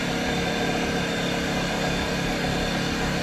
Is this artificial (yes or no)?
no